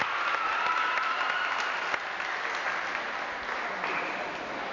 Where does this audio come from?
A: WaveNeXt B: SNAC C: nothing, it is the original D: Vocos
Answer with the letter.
C